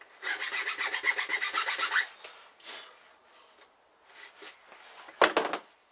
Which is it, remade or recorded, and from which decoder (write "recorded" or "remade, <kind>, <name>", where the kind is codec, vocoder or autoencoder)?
recorded